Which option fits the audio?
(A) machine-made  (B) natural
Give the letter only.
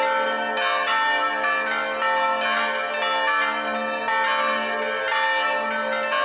B